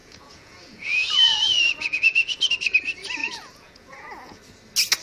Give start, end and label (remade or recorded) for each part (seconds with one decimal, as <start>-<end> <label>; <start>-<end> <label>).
0.0-2.5 remade; 2.5-3.2 recorded; 3.2-4.4 remade; 4.4-5.0 recorded